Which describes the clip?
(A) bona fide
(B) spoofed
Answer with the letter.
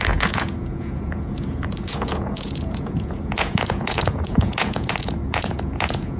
B